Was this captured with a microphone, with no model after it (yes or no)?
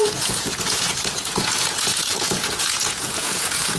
no